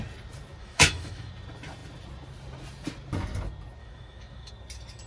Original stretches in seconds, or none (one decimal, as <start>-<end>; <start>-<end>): 0.0-0.6; 1.3-3.8; 4.5-5.1